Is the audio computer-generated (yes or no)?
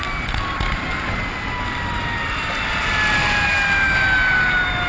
no